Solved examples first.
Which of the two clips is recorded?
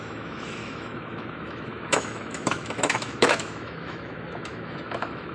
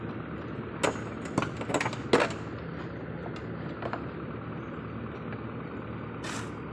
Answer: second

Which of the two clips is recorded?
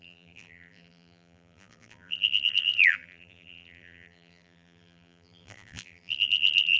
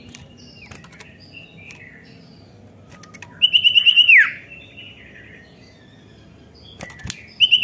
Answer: second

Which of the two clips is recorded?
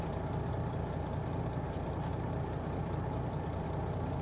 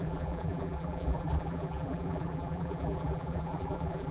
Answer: first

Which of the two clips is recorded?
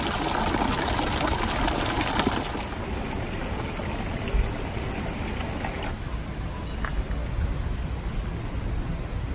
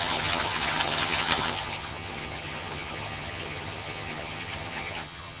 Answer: first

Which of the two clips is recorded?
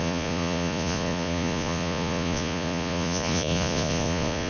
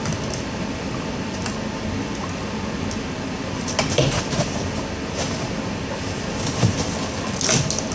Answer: second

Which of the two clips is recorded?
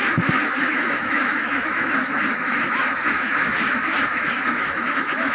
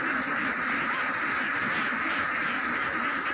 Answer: second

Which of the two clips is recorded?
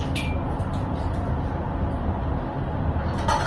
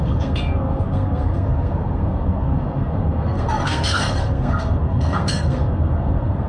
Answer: first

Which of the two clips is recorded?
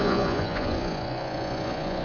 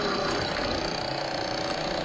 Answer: second